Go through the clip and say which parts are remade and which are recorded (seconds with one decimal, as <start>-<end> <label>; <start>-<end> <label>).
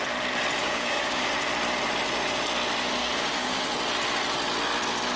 0.0-0.6 recorded; 0.6-1.3 remade; 1.3-3.0 recorded; 3.0-3.6 remade; 3.6-5.2 recorded